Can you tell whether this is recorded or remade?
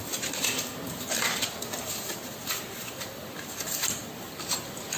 recorded